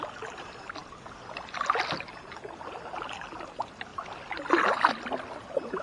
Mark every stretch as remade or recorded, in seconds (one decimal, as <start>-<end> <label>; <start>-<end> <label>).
0.0-5.8 recorded